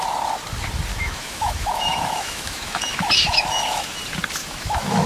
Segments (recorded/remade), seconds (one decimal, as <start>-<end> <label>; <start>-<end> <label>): 0.0-0.9 recorded; 0.9-4.0 remade; 4.0-4.4 recorded; 4.4-5.1 remade